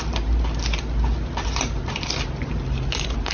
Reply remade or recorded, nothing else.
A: recorded